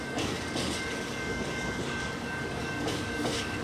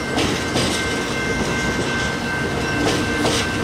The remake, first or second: first